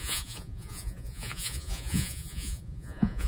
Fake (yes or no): yes